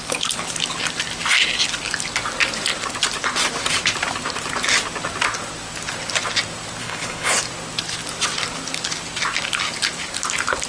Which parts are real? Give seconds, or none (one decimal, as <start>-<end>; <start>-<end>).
0.0-6.8; 7.4-10.7

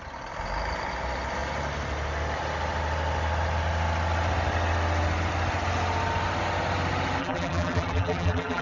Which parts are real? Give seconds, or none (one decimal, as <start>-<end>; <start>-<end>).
0.0-7.2

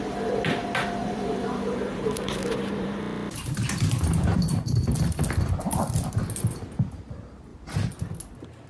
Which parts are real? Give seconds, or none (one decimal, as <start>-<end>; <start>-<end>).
0.0-1.0; 4.8-8.7

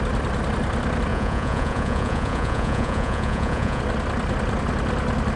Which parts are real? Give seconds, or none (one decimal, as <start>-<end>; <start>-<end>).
0.0-1.1; 3.8-5.4

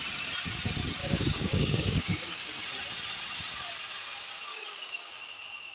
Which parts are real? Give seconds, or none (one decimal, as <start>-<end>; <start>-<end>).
0.0-1.0; 2.4-4.5; 5.1-5.7

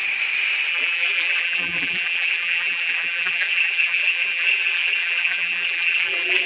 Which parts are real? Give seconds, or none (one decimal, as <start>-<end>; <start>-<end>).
0.0-0.7

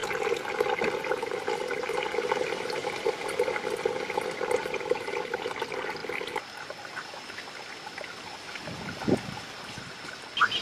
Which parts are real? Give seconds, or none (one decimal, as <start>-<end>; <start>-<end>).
0.0-10.6